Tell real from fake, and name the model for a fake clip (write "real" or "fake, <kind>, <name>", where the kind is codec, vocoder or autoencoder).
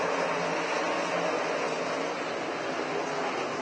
real